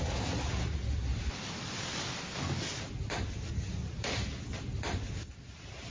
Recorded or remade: recorded